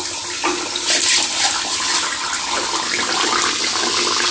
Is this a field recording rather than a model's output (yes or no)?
yes